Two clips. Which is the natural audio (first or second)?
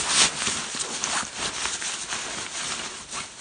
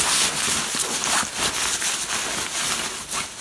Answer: second